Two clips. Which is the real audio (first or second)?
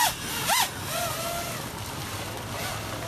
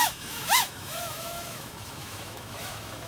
first